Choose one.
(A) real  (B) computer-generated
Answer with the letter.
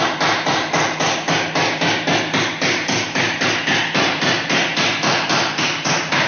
A